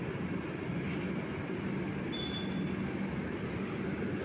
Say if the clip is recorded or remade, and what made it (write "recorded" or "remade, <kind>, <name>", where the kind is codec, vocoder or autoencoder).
recorded